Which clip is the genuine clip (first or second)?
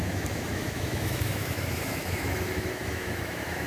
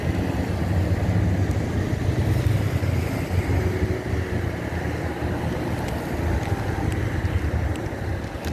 second